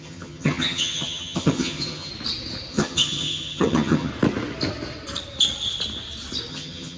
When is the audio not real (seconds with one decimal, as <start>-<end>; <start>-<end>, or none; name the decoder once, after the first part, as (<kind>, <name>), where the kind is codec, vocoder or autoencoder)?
0.0-2.1 (vocoder, HiFi-GAN); 2.7-4.1; 6.5-7.0